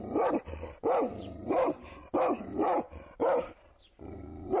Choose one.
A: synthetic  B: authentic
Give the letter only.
B